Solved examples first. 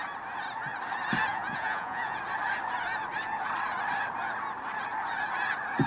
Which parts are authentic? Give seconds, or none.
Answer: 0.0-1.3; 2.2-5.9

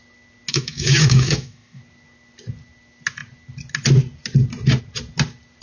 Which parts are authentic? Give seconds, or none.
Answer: 0.0-0.5; 1.8-5.6

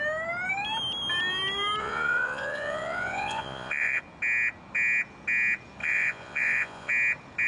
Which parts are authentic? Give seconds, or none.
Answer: 0.0-1.8; 4.0-5.8; 6.9-7.5

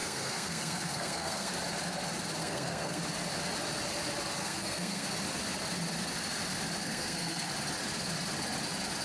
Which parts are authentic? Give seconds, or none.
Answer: 1.5-2.4; 3.0-4.4; 5.1-6.8; 7.5-9.0

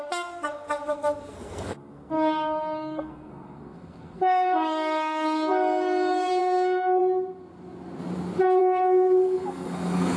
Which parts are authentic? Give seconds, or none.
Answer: 7.0-8.6

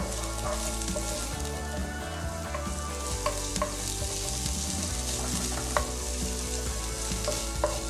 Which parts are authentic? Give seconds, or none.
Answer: 0.0-7.9

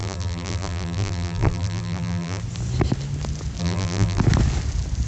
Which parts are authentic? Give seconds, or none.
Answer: 2.4-3.6; 4.2-5.1